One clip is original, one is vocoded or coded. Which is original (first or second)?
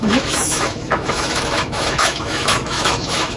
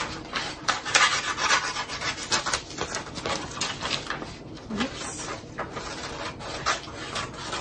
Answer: second